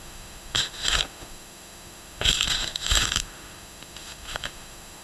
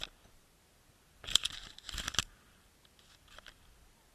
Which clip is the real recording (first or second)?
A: second